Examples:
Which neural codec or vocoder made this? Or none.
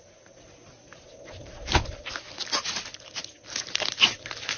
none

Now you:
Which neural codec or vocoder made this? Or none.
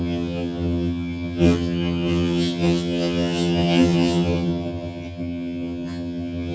vocoder, HiFi-GAN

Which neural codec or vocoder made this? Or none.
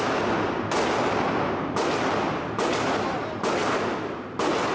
none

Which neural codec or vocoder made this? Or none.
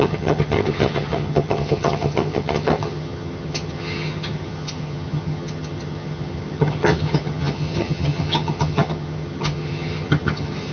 vocoder, HiFi-GAN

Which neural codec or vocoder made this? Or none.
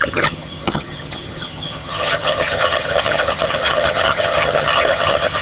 vocoder, HiFi-GAN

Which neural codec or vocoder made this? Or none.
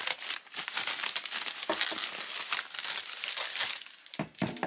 none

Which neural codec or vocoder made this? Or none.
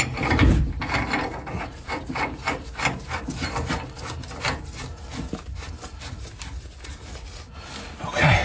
none